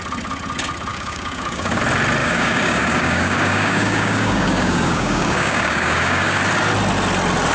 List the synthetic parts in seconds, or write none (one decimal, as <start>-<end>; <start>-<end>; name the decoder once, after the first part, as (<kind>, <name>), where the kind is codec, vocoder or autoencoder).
0.9-1.8 (codec, DAC); 2.2-6.4